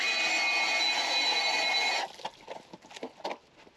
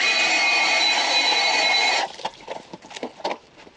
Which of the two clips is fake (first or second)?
second